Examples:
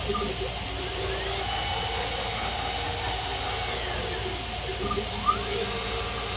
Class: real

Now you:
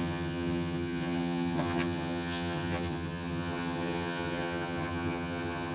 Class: fake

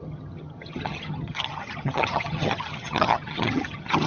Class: fake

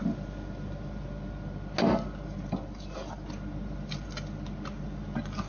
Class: real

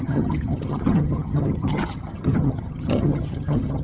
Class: fake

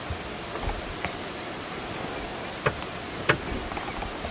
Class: real